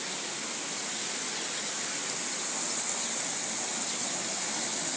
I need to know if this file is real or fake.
real